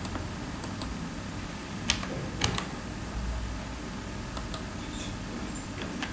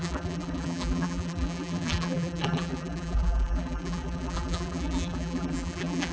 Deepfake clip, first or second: second